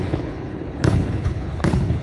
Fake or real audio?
fake